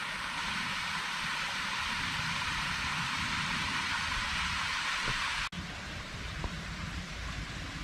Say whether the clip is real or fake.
real